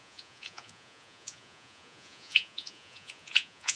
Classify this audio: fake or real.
fake